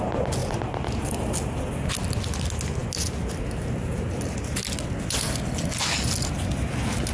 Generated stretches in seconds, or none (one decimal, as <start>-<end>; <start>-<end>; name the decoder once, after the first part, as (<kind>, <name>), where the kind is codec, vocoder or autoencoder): none